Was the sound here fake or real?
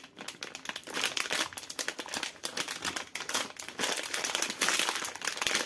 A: real